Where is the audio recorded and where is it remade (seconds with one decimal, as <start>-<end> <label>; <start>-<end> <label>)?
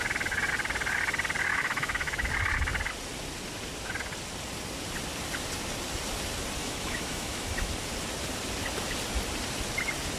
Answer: 0.0-1.5 recorded; 1.5-2.3 remade; 2.3-6.6 recorded; 6.6-7.7 remade; 7.7-10.2 recorded